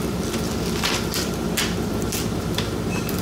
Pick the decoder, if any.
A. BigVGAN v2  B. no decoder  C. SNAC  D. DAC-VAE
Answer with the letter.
A